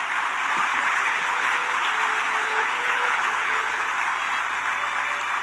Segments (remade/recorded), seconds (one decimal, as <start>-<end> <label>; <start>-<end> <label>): 0.0-0.7 recorded; 0.7-1.8 remade; 1.8-2.4 recorded; 2.4-3.9 remade; 3.9-5.4 recorded